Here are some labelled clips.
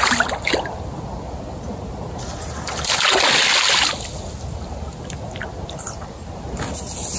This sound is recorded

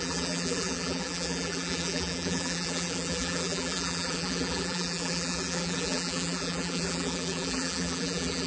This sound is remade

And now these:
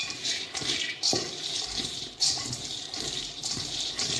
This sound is remade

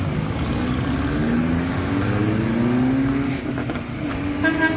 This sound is recorded